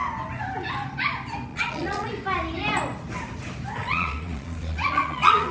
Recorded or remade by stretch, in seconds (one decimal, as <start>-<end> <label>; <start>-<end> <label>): 0.0-1.5 recorded; 1.5-2.1 remade; 2.1-3.8 recorded; 3.8-5.5 remade